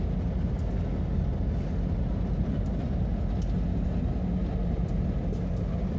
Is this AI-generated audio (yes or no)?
no